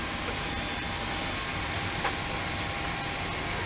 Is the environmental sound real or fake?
real